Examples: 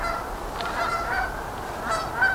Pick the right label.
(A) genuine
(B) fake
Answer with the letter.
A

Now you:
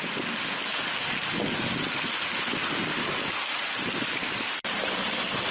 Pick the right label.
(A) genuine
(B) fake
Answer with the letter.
A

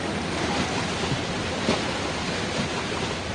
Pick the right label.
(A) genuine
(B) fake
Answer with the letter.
A